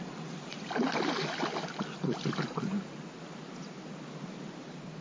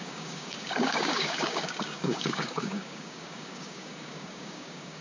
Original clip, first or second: first